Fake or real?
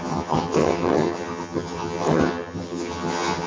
fake